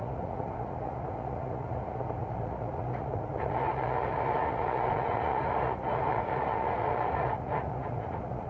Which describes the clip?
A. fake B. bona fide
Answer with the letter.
A